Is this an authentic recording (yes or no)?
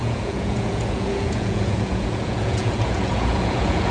no